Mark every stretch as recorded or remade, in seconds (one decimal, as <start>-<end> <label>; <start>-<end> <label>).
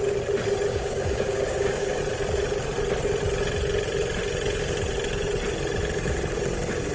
0.0-0.7 recorded; 0.7-2.0 remade; 2.0-6.9 recorded